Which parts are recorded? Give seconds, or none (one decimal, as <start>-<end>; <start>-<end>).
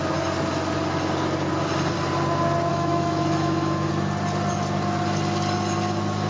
0.0-2.7; 3.9-6.3